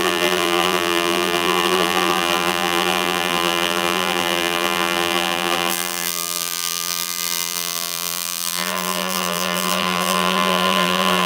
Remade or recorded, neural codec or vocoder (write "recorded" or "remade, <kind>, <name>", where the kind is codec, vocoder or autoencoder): remade, vocoder, BigVGAN v2